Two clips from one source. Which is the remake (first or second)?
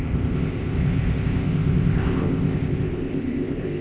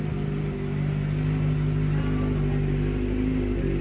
first